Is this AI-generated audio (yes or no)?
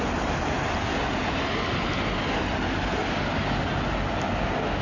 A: no